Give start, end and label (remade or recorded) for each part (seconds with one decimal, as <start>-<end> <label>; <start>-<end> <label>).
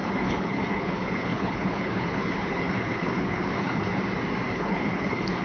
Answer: 0.0-3.9 remade; 3.9-4.5 recorded; 4.5-5.4 remade